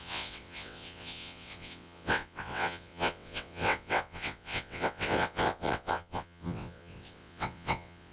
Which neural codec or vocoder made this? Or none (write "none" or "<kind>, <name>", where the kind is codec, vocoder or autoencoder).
vocoder, WaveNeXt